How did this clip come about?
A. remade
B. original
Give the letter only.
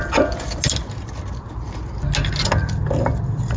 B